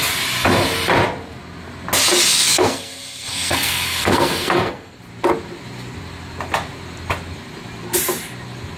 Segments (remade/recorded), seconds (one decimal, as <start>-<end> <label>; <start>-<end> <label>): 0.0-2.3 recorded; 2.3-5.0 remade; 5.0-8.8 recorded